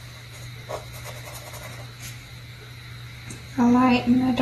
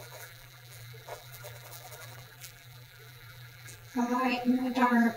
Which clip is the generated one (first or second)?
second